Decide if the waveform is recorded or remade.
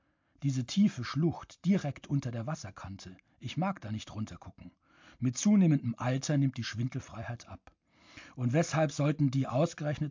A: recorded